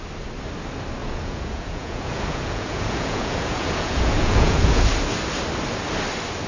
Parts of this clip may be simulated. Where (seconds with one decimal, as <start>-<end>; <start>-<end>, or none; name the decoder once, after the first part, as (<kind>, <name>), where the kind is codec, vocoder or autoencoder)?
1.0-4.8 (vocoder, Vocos)